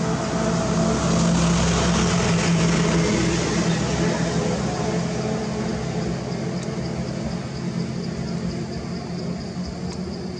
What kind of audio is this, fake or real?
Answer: real